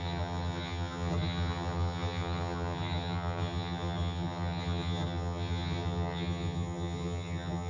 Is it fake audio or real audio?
fake